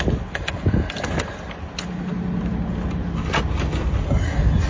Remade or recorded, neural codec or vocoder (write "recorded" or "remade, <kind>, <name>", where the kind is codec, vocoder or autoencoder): recorded